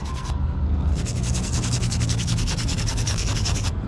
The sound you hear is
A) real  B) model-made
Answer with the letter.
B